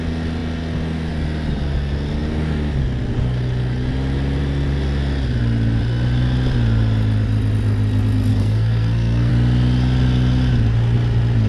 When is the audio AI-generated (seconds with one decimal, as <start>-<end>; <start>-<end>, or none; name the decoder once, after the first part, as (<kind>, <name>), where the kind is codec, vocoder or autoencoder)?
8.3-9.3 (codec, SNAC)